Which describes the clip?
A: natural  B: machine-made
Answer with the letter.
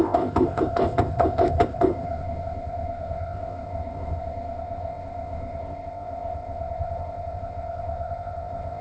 B